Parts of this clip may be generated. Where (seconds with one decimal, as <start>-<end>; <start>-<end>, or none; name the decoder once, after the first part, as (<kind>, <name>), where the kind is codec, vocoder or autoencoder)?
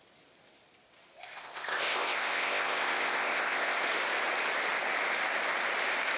1.2-3.8 (codec, ZipCodec)